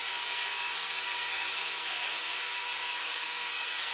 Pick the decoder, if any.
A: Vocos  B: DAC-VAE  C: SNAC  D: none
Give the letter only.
C